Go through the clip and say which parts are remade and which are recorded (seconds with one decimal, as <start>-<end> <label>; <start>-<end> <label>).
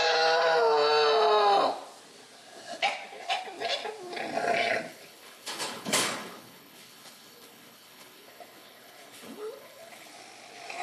0.0-4.9 recorded; 4.9-10.1 remade; 10.1-10.8 recorded